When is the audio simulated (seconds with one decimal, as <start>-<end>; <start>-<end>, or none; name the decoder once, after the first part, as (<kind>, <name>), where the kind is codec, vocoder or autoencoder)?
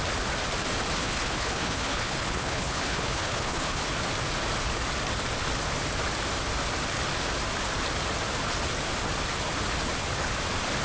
1.0-3.8 (codec, HILCodec)